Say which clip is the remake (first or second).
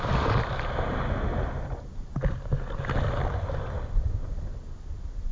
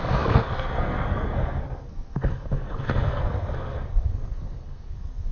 second